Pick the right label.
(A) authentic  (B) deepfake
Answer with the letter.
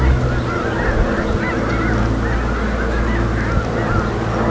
A